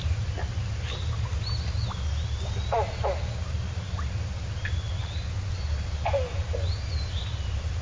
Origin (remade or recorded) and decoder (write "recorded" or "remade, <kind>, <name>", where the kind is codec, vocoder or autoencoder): recorded